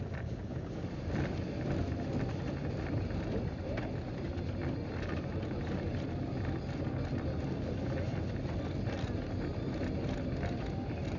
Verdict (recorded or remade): recorded